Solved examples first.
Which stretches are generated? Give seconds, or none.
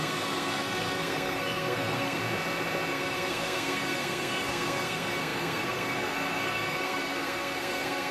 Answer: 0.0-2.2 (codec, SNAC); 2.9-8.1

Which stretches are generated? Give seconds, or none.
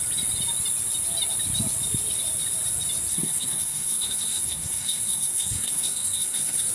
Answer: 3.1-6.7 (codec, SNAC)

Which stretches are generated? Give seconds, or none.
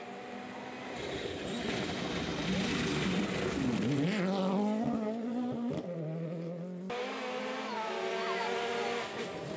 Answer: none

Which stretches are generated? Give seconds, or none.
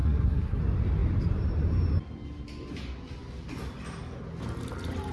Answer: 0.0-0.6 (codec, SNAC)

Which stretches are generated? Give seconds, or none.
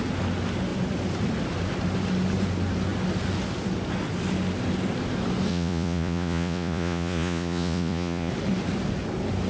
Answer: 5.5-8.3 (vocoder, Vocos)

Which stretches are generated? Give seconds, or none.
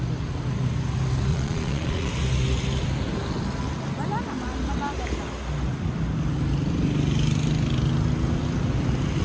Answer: 1.3-2.1 (vocoder, Vocos)